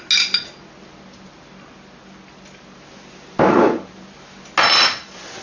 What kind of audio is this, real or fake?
real